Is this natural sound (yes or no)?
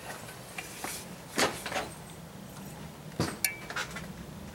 yes